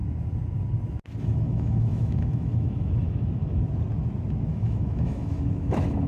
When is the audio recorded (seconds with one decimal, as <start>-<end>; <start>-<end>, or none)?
0.0-1.2; 3.6-4.5